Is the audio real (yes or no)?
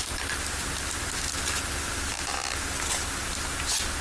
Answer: yes